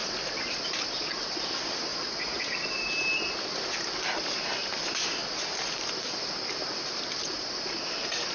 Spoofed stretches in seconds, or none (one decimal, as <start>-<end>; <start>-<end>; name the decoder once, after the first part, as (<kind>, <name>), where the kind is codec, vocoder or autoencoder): 1.9-2.4 (vocoder, Vocos)